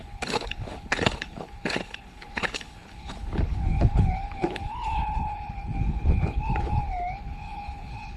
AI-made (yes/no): yes